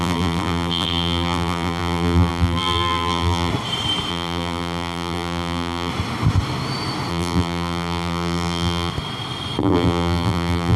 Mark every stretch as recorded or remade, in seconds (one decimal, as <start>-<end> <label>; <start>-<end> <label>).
0.0-3.5 remade; 3.5-4.1 recorded; 4.1-5.9 remade; 5.9-7.1 recorded; 7.1-8.9 remade; 8.9-9.6 recorded; 9.6-10.8 remade